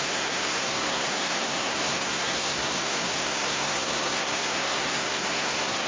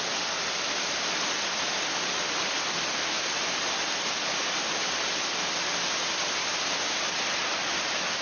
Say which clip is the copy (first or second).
first